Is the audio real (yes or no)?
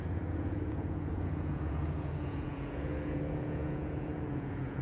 no